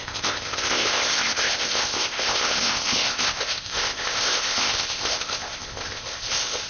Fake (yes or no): yes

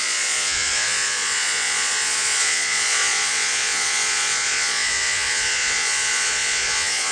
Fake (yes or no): yes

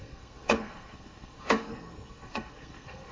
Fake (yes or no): yes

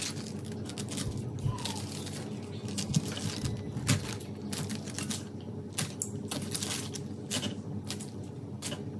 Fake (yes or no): no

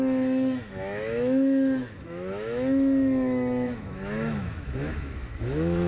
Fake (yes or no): yes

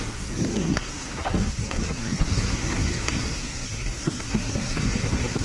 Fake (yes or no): yes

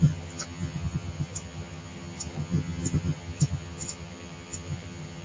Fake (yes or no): yes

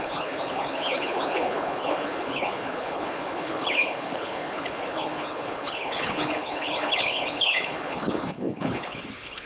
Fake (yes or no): yes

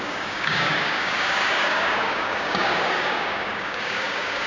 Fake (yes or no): yes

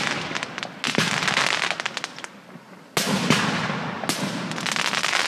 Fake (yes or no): no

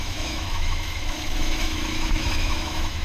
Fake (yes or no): yes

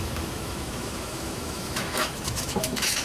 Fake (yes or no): yes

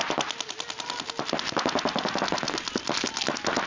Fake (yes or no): no